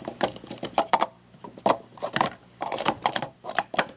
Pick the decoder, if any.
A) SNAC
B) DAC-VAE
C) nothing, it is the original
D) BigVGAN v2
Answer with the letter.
D